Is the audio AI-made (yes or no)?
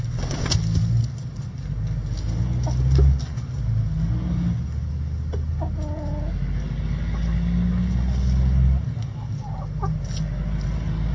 no